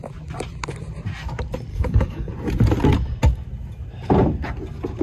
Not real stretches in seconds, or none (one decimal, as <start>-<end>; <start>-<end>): 1.7-2.3

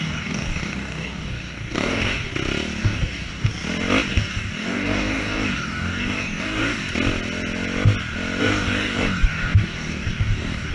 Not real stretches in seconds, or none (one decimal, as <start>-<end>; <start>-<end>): 0.0-2.3; 2.8-3.5; 4.1-6.8; 8.4-10.7

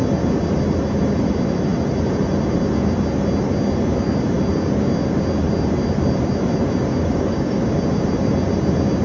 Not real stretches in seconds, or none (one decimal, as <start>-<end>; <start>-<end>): 7.0-7.7